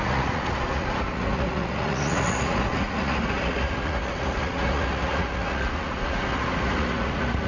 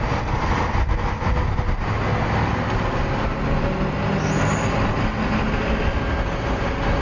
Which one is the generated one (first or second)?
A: first